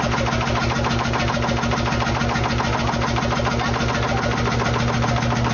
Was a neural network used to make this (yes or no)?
no